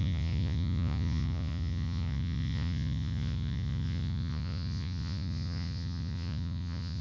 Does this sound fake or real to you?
fake